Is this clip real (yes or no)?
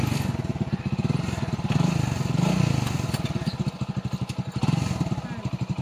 yes